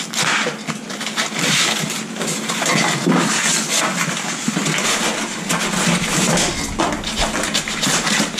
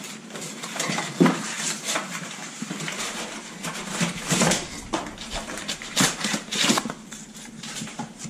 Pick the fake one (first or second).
second